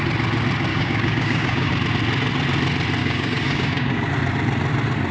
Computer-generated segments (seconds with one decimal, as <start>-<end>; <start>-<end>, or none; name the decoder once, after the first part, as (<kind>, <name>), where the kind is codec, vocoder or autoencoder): 0.7-1.7 (codec, DAC); 3.0-4.1

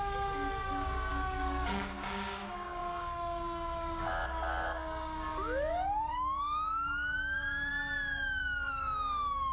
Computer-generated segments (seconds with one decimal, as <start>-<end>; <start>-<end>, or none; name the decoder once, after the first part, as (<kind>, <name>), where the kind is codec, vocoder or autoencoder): 0.0-7.7 (codec, DAC); 8.7-9.5

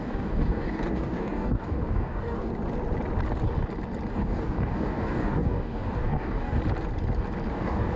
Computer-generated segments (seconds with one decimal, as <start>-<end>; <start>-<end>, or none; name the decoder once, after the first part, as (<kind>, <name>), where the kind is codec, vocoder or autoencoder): 0.0-2.5 (codec, DAC); 4.1-6.6; 7.5-8.0

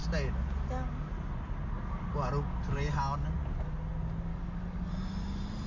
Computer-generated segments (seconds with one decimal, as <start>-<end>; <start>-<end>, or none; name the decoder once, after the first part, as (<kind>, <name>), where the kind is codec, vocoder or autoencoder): 4.3-4.9 (codec, DAC)

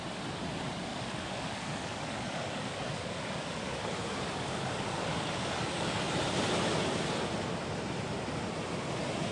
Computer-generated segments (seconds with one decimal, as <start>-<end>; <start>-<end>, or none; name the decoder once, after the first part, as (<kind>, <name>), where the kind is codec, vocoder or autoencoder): 0.9-6.0 (codec, DAC)

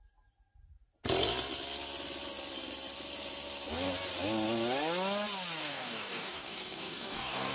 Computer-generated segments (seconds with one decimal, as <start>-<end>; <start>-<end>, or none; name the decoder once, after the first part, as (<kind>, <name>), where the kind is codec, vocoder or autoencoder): 5.6-7.5 (codec, DAC)

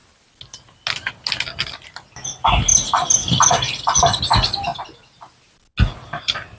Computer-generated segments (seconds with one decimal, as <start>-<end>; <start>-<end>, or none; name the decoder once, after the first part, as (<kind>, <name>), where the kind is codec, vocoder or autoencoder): none